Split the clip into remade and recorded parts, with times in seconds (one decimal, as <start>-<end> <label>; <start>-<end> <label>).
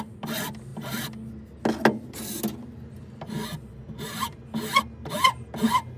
0.0-6.0 recorded